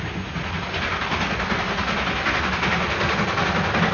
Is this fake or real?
real